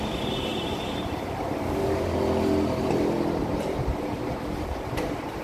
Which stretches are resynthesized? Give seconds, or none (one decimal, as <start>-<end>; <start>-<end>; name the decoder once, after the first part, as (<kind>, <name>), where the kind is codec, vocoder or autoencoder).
0.5-1.3 (vocoder, BigVGAN v2); 3.4-4.4